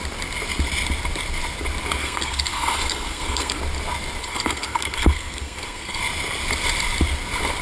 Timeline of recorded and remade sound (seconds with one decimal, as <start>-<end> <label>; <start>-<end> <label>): 0.0-2.0 recorded; 2.0-3.6 remade; 3.6-4.2 recorded; 4.2-6.0 remade; 6.0-7.6 recorded